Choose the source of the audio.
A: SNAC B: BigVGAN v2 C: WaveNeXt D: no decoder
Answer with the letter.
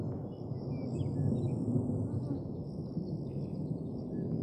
D